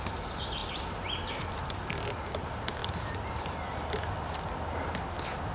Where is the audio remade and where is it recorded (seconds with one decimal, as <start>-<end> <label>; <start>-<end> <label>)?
0.0-2.8 recorded; 2.8-3.5 remade; 3.5-5.5 recorded